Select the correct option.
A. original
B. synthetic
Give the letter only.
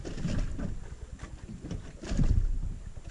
A